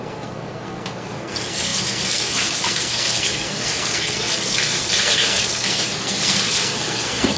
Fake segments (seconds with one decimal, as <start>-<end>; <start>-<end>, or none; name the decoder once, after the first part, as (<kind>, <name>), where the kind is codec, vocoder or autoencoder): 0.0-7.4 (codec, SNAC)